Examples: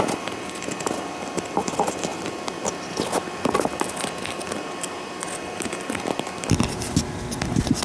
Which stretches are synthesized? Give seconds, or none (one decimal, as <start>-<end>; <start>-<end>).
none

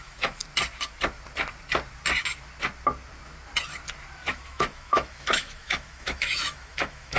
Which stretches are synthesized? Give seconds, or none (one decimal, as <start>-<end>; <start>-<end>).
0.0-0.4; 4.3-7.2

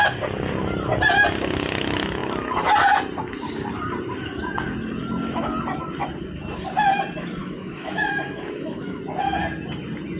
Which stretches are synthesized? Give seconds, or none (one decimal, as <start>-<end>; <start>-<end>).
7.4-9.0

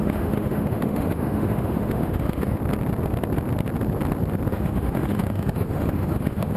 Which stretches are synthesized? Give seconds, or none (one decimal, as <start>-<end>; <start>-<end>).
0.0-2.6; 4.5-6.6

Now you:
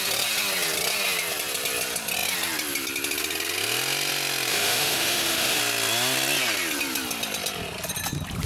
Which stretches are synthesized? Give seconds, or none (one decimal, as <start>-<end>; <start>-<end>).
4.5-5.6